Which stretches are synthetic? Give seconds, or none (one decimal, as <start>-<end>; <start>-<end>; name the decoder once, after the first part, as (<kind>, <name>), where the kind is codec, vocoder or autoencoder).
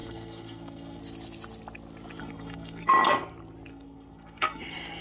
0.0-1.0 (codec, SNAC); 2.2-2.9; 3.7-4.6